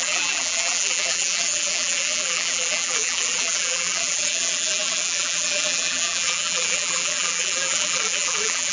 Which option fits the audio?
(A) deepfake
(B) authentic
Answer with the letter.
A